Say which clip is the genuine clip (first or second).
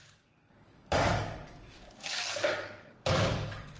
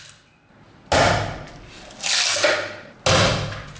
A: second